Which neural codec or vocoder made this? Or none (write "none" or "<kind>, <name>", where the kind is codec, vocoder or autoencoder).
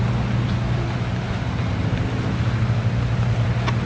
none